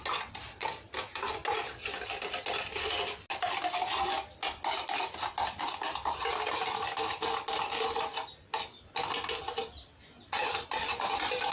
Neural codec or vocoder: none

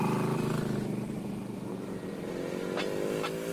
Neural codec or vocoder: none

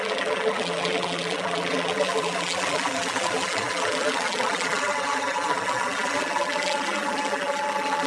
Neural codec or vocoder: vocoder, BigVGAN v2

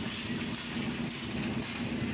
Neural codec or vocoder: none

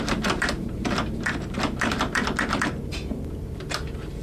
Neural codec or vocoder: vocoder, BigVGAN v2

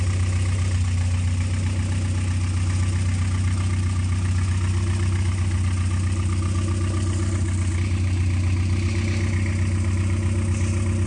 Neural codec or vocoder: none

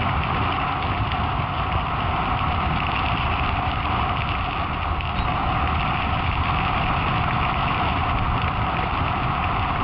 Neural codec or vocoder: none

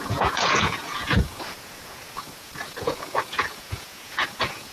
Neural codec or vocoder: vocoder, Vocos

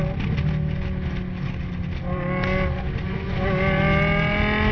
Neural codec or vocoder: none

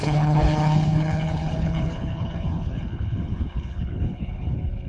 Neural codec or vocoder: codec, HILCodec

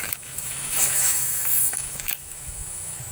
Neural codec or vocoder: autoencoder, DAC-VAE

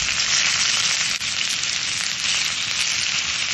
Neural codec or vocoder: none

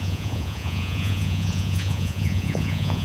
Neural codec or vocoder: vocoder, Vocos